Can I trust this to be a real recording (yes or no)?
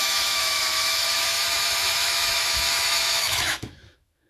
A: no